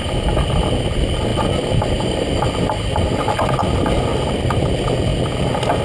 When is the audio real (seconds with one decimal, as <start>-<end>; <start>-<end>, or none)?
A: 0.0-5.8